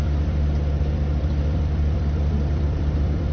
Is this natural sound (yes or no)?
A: no